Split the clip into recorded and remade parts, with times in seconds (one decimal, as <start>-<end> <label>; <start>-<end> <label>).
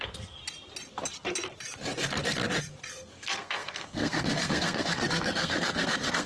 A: 0.0-0.4 remade; 0.4-2.9 recorded; 2.9-6.3 remade